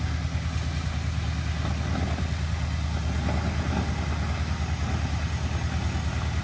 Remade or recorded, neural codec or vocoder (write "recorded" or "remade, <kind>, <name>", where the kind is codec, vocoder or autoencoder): recorded